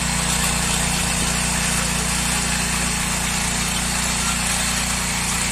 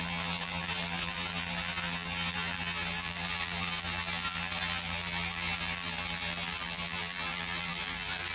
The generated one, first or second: second